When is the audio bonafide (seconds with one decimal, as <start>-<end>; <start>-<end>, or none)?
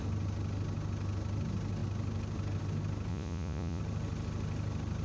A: 0.0-3.1; 3.8-5.0